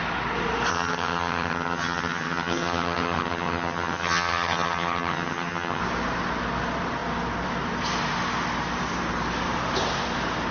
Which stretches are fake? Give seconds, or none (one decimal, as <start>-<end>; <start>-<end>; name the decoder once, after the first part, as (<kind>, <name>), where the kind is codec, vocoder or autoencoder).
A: 0.7-5.8 (vocoder, HiFi-GAN)